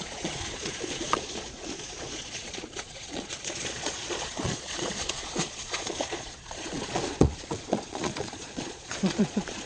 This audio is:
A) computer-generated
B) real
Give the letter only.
A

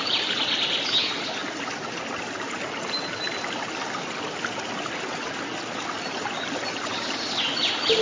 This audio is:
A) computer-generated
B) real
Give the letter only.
B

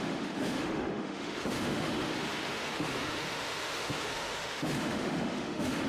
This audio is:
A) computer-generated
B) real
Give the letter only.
A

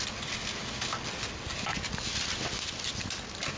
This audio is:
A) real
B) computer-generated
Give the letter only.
A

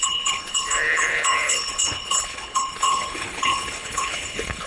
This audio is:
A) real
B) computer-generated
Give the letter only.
B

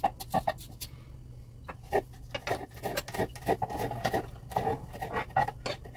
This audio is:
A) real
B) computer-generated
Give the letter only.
A